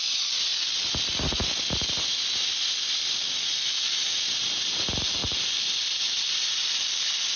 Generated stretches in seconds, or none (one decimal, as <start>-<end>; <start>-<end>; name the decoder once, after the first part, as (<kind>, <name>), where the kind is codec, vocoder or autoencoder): 0.0-0.5 (vocoder, BigVGAN v2); 3.3-7.4